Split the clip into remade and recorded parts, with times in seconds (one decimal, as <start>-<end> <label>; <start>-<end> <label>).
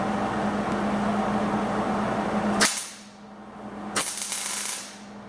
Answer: 0.0-5.3 recorded